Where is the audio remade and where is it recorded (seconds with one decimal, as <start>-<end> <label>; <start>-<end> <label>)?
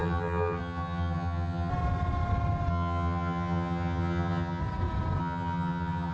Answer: 0.0-1.7 remade; 1.7-2.7 recorded; 2.7-4.6 remade; 4.6-5.2 recorded; 5.2-6.1 remade